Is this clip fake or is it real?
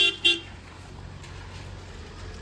real